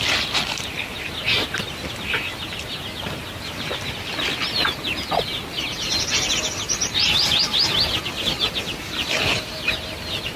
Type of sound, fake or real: real